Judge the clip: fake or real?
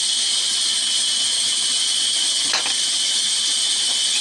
real